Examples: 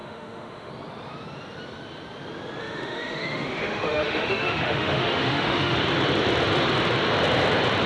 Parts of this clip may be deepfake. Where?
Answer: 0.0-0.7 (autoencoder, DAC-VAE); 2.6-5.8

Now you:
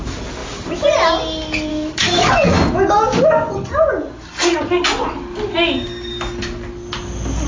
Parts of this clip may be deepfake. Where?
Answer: 1.7-2.3 (autoencoder, DAC-VAE)

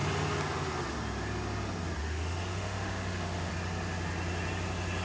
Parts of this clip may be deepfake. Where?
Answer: 2.0-3.5 (autoencoder, DAC-VAE)

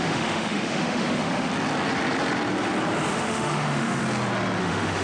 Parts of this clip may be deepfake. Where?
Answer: 0.0-1.5 (autoencoder, DAC-VAE); 3.1-4.0; 4.6-5.0